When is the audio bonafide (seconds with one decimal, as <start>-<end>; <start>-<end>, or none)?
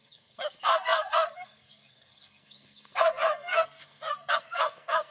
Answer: none